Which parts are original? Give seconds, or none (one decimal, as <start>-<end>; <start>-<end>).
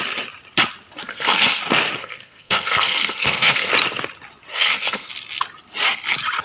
0.0-1.0; 1.6-2.0; 3.7-4.5; 5.1-6.4